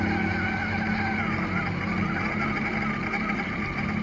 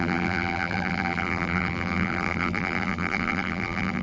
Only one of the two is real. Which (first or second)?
first